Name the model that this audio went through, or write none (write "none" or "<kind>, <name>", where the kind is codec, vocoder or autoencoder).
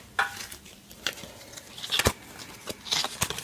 none